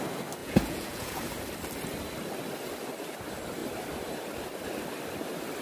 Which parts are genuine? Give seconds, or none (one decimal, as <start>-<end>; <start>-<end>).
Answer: 0.0-0.4; 1.2-5.6